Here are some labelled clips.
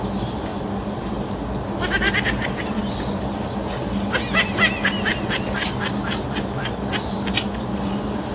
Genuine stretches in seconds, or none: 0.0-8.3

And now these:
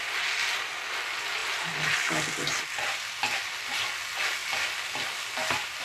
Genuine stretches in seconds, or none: 0.0-5.8

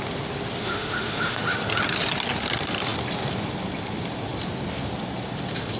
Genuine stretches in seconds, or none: 0.0-0.6; 1.4-5.8

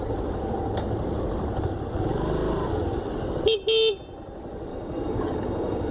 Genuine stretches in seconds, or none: 0.0-4.7

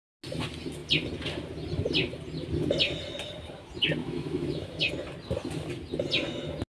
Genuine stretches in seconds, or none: 0.0-4.0; 4.9-6.8

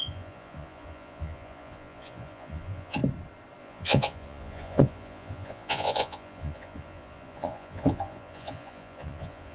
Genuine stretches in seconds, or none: 3.0-3.6

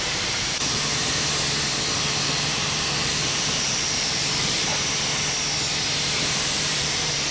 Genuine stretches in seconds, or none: 0.9-2.0; 4.7-6.2

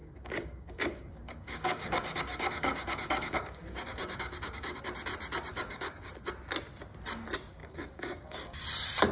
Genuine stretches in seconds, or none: 4.8-5.5; 6.1-7.6; 8.6-9.1